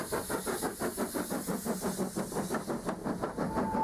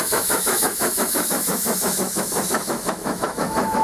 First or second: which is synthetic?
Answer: second